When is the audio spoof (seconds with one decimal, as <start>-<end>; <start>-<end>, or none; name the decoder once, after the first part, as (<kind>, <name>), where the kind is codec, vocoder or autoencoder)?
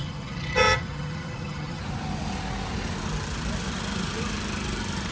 0.0-1.8 (vocoder, HiFi-GAN)